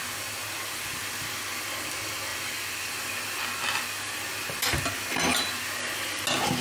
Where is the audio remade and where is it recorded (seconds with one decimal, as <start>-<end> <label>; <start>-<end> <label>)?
0.0-6.6 recorded